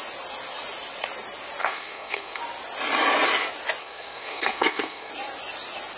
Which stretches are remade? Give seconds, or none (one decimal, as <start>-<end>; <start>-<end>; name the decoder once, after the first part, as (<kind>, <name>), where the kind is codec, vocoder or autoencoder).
1.6-2.4 (codec, SNAC); 3.8-5.1